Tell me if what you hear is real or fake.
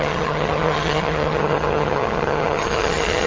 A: fake